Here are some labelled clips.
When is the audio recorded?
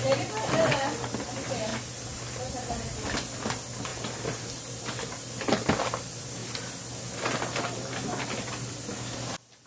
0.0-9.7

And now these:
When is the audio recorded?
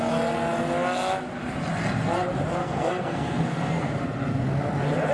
0.0-2.6; 3.9-5.1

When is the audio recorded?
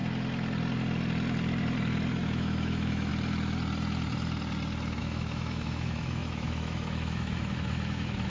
0.0-2.2; 3.1-5.0